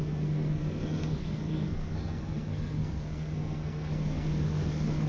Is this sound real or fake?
fake